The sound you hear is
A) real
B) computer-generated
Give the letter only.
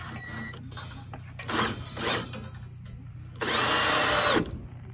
A